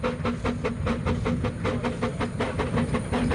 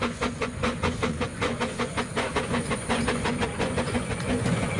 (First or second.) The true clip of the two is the first